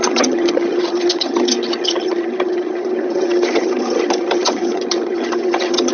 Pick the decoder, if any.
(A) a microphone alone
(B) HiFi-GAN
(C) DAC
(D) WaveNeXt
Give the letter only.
B